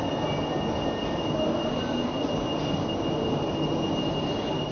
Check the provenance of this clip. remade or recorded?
recorded